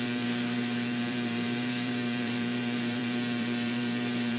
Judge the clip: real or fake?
fake